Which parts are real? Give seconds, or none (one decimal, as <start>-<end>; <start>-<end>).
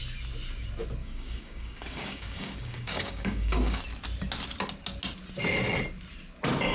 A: 0.0-1.0; 3.8-6.7